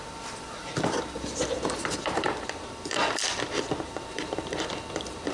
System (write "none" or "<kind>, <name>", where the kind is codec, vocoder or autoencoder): vocoder, BigVGAN v2